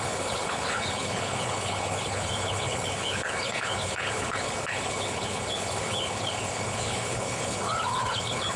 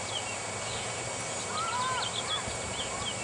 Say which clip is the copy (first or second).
first